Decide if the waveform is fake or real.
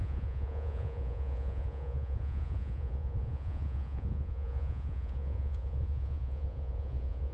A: fake